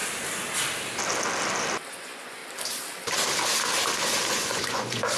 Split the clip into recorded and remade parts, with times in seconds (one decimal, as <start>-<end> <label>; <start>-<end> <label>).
0.0-1.9 recorded; 1.9-2.4 remade; 2.4-4.3 recorded; 4.3-5.2 remade

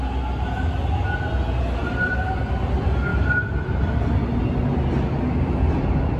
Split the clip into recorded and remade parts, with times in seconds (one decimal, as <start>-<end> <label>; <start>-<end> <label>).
0.0-6.2 recorded

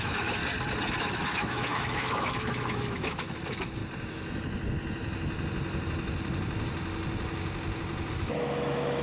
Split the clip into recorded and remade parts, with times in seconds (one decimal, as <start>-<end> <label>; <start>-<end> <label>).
0.0-0.4 remade; 0.4-1.0 recorded; 1.0-3.8 remade; 3.8-8.1 recorded; 8.1-9.0 remade

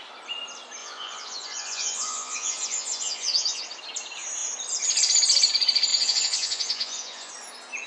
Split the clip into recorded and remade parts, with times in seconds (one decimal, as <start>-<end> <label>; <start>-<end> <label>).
0.0-0.8 recorded; 0.8-3.6 remade; 3.6-5.9 recorded; 5.9-7.3 remade; 7.3-7.9 recorded

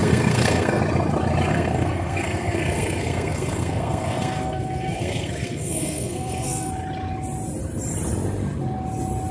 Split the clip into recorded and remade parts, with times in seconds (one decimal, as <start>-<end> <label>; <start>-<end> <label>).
0.0-0.8 remade; 0.8-1.5 recorded; 1.5-6.7 remade; 6.7-9.3 recorded

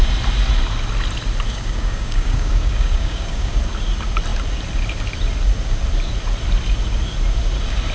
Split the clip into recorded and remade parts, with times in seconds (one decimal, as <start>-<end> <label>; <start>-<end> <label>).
0.0-1.5 recorded; 1.5-3.6 remade; 3.6-7.9 recorded

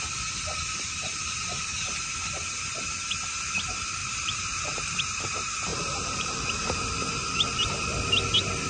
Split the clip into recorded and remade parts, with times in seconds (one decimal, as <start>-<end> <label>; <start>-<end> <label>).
0.0-4.0 recorded; 4.0-5.0 remade; 5.0-5.7 recorded; 5.7-6.8 remade; 6.8-8.7 recorded